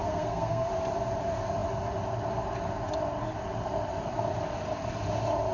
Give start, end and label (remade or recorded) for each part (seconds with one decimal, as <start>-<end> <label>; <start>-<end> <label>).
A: 0.0-0.7 remade; 0.7-5.5 recorded